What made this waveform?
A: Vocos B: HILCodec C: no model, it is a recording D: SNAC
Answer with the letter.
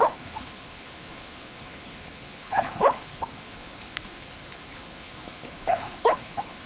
B